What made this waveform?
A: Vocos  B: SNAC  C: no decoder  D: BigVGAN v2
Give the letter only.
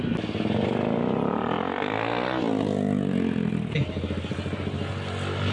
C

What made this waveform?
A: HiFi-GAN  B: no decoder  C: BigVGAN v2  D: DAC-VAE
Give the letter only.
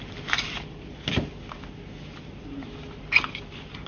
B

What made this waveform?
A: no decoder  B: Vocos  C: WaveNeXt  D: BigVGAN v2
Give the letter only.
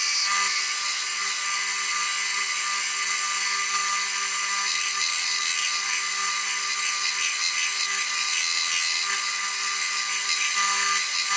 A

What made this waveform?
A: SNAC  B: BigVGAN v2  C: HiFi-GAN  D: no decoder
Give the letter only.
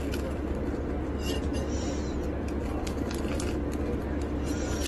D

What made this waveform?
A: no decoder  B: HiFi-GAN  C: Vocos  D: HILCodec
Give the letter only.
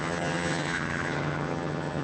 B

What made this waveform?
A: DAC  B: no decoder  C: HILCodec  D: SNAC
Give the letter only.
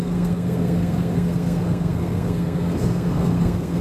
D